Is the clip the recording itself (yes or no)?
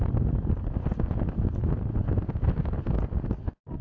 yes